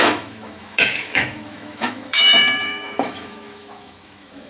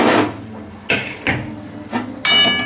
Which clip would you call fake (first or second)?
first